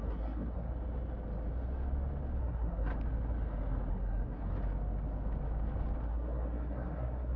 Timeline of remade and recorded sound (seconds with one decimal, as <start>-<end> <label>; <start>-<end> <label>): 0.0-0.7 remade; 0.7-2.4 recorded; 2.4-2.9 remade; 2.9-3.9 recorded; 3.9-4.4 remade; 4.4-6.1 recorded; 6.1-7.4 remade